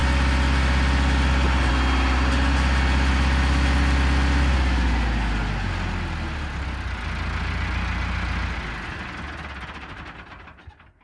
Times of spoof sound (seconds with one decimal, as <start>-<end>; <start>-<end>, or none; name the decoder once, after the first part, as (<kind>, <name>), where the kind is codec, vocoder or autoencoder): none